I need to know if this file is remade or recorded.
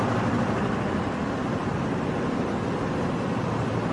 recorded